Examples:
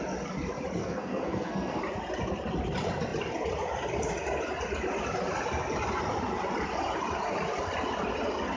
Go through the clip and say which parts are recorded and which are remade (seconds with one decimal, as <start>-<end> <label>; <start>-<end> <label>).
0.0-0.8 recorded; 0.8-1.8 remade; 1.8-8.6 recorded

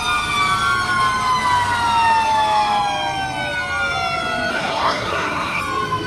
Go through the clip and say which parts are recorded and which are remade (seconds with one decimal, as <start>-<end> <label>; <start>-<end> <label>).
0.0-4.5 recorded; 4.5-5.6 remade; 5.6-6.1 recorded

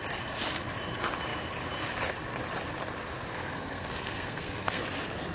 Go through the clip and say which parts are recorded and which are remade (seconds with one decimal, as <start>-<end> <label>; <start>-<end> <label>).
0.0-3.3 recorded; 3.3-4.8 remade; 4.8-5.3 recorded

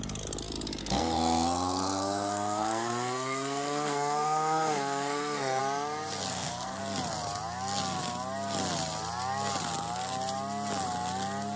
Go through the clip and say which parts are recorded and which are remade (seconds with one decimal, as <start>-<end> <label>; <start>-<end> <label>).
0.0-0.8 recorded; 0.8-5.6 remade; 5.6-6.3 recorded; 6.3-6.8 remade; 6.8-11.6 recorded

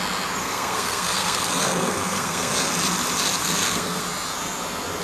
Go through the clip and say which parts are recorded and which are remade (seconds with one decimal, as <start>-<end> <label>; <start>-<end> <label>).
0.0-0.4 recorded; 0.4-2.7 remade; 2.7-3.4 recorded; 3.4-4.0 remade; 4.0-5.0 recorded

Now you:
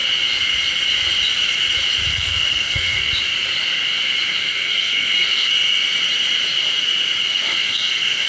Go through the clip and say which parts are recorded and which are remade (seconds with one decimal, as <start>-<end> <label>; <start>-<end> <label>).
0.0-2.1 recorded; 2.1-3.1 remade; 3.1-4.4 recorded; 4.4-5.5 remade; 5.5-7.2 recorded; 7.2-8.3 remade

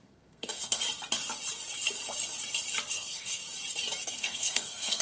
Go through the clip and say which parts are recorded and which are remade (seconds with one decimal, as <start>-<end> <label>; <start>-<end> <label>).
0.0-0.8 remade; 0.8-2.9 recorded; 2.9-3.4 remade; 3.4-4.0 recorded; 4.0-5.0 remade